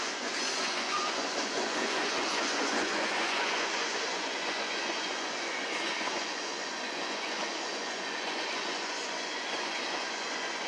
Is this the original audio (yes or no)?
no